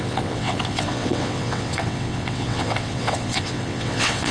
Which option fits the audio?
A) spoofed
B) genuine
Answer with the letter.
A